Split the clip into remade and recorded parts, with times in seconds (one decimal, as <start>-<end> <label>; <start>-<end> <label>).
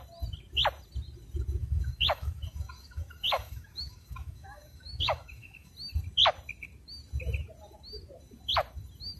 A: 0.0-1.6 recorded; 1.6-5.7 remade; 5.7-9.2 recorded